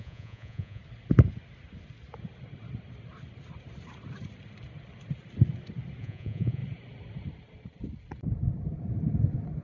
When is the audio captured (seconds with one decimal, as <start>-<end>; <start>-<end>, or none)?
0.8-6.0; 6.6-9.6